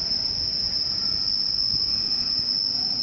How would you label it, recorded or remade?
recorded